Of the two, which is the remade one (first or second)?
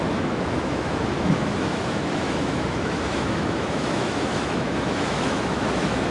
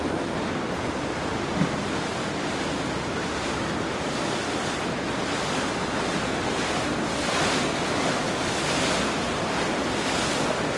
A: first